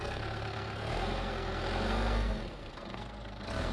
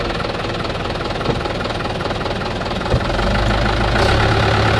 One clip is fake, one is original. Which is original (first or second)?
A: second